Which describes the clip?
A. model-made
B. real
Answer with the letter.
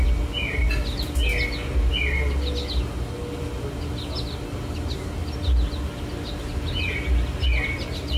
B